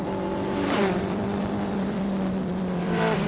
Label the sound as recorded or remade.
remade